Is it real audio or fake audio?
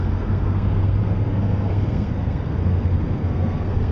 fake